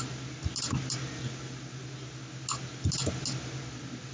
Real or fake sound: real